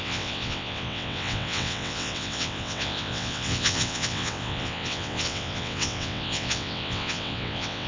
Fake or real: fake